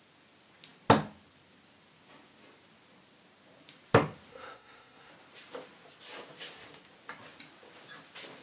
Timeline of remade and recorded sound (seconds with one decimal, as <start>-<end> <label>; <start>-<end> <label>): 0.0-4.3 recorded; 4.3-5.1 remade; 5.1-8.4 recorded

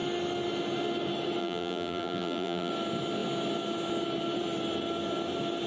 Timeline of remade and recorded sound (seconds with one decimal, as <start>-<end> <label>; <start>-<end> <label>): 0.0-1.4 recorded; 1.4-2.7 remade; 2.7-5.7 recorded

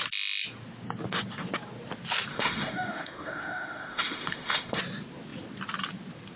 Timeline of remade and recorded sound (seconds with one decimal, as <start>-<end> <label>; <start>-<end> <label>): 0.0-2.3 recorded; 2.3-4.8 remade; 4.8-6.4 recorded

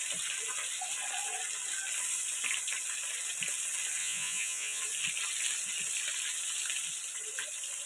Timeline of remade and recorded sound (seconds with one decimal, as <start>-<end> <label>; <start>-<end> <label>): 0.0-4.0 recorded; 4.0-4.8 remade; 4.8-7.9 recorded

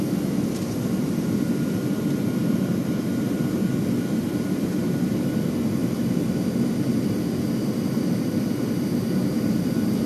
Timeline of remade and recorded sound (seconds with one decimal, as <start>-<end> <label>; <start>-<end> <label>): 0.0-10.1 recorded